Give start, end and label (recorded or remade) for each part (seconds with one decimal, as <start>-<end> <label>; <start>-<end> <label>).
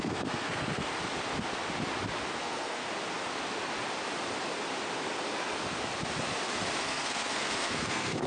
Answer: 0.0-0.9 remade; 0.9-2.4 recorded; 2.4-2.8 remade; 2.8-6.8 recorded; 6.8-8.3 remade